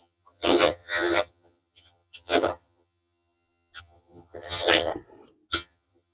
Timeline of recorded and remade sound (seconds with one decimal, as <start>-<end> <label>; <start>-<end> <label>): 0.0-4.9 remade; 4.9-5.5 recorded; 5.5-6.1 remade